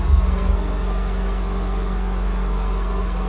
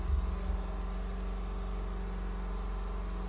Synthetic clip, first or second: first